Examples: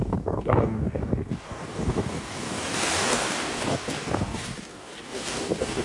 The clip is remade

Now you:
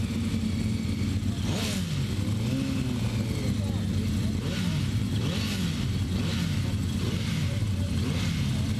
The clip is recorded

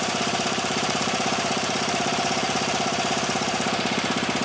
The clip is remade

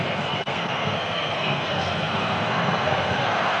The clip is remade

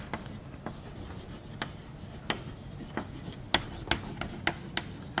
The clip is recorded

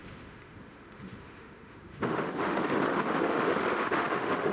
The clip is remade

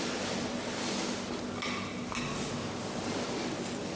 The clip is recorded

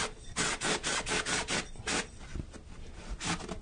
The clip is recorded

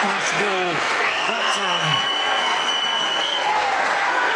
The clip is remade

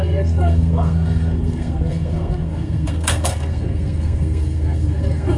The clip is remade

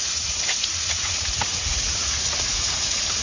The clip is remade